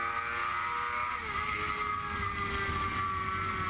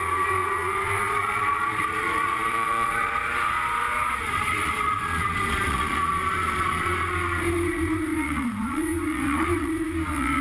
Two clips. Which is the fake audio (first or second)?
second